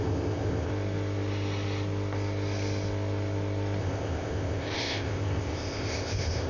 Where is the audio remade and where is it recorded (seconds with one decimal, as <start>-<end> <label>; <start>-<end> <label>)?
0.0-0.7 remade; 0.7-3.8 recorded; 3.8-6.5 remade